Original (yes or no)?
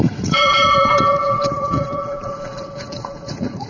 no